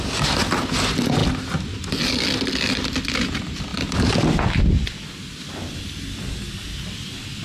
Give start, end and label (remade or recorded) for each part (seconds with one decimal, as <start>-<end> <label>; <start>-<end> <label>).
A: 0.0-7.4 recorded